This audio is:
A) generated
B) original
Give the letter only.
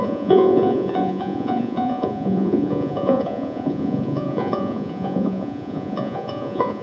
A